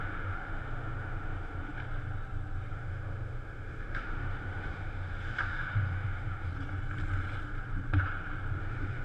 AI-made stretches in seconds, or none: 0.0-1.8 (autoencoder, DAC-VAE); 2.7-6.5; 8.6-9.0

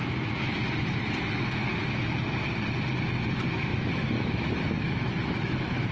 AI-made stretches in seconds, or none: 1.2-1.7 (autoencoder, DAC-VAE); 3.3-5.9

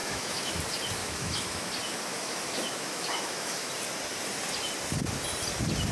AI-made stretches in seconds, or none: 0.0-0.6 (autoencoder, DAC-VAE); 1.0-1.7; 2.1-3.7

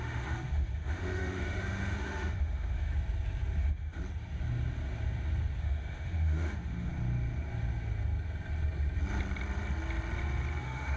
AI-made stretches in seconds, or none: 0.0-2.9 (autoencoder, DAC-VAE); 3.6-4.0; 5.6-6.9; 10.6-11.0

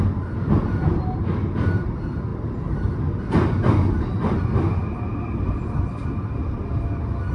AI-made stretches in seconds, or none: none

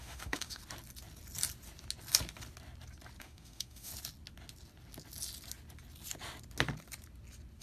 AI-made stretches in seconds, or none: 0.0-0.6 (autoencoder, DAC-VAE); 3.2-3.9